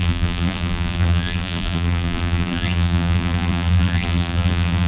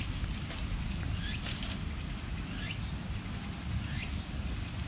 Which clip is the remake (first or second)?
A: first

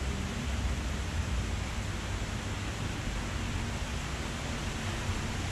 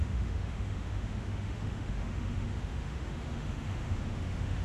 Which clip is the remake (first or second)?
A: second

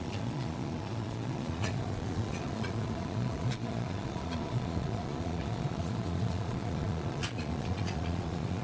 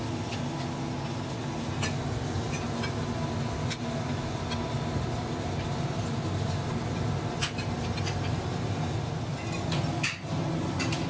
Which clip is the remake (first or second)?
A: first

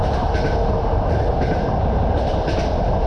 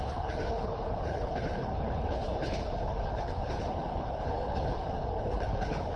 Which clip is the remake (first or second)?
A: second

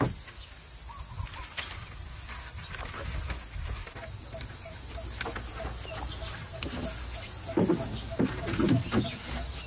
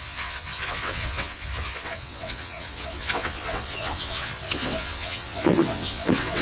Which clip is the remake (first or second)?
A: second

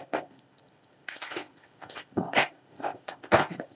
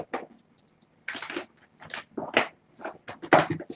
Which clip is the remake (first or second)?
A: first